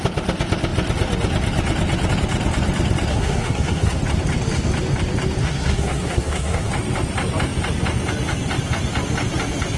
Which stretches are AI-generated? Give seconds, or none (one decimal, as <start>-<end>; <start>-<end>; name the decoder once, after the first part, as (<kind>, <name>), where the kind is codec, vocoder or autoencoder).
3.1-4.0 (codec, SNAC); 5.4-6.7

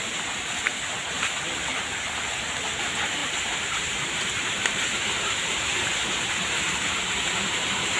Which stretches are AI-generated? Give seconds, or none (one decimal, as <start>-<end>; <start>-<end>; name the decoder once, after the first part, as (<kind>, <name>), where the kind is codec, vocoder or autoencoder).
3.2-8.0 (vocoder, BigVGAN v2)

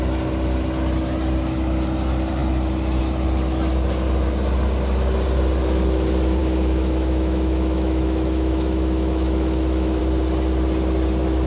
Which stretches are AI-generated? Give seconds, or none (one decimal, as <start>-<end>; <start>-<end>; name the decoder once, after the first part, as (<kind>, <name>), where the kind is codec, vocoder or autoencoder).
6.4-10.0 (autoencoder, DAC-VAE)

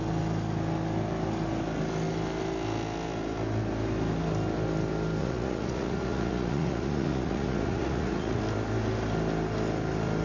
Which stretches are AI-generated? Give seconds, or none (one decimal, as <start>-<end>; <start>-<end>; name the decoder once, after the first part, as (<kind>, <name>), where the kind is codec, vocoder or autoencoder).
5.2-8.4 (vocoder, Vocos)

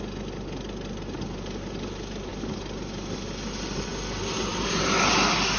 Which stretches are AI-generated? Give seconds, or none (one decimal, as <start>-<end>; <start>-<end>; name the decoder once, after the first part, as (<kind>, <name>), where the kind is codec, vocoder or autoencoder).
none

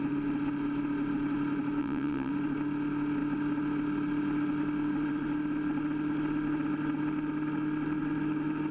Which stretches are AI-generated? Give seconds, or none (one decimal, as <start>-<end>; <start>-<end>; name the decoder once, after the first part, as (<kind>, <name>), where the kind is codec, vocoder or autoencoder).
1.8-2.3 (vocoder, WaveNeXt)

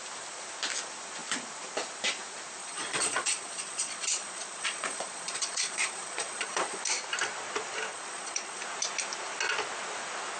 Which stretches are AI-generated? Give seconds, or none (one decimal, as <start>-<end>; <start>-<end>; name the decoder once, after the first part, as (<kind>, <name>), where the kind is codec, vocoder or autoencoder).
2.6-6.8 (vocoder, Vocos); 7.9-8.6